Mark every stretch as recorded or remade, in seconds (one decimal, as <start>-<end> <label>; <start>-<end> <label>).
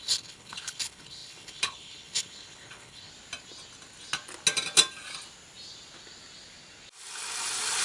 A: 0.0-3.1 remade; 3.1-7.8 recorded